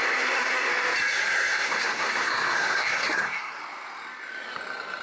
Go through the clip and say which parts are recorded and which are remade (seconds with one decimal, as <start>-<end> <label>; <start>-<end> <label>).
0.0-0.7 remade; 0.7-1.1 recorded; 1.1-3.6 remade; 3.6-5.0 recorded